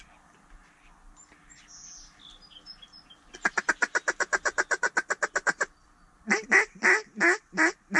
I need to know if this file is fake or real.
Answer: real